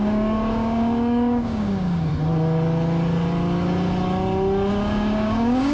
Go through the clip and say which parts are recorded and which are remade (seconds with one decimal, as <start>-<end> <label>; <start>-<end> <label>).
0.0-2.1 remade; 2.1-4.7 recorded; 4.7-5.7 remade